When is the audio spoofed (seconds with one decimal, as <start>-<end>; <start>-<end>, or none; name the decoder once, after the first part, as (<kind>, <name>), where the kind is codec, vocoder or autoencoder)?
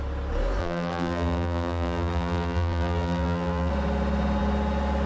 0.6-3.7 (vocoder, BigVGAN v2)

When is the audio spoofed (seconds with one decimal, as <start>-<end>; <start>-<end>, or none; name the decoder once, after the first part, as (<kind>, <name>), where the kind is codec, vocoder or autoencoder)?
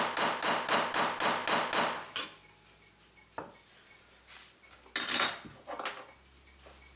none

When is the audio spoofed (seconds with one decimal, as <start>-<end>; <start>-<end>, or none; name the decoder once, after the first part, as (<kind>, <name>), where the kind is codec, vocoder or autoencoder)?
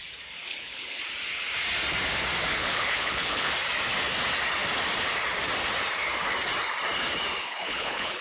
0.5-1.0 (codec, HILCodec); 2.5-3.5; 7.4-8.2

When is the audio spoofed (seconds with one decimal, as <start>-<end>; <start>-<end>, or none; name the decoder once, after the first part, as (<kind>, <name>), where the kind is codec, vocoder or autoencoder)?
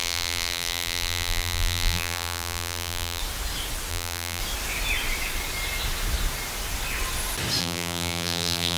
0.0-3.2 (vocoder, BigVGAN v2); 3.9-4.4; 7.6-8.8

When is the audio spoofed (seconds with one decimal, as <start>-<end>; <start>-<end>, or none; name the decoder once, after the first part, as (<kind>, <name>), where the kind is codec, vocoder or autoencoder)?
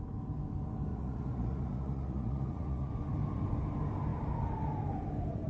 0.9-2.9 (vocoder, Vocos)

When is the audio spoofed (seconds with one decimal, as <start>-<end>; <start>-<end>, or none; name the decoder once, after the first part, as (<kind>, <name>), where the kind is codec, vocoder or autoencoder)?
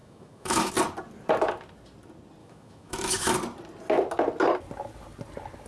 0.0-0.7 (autoencoder, DAC-VAE); 2.4-3.3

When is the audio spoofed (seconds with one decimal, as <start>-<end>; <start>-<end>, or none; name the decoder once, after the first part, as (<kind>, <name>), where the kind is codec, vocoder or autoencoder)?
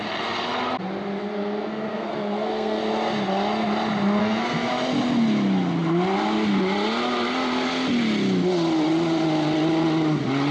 1.2-2.8 (codec, SNAC); 4.2-4.7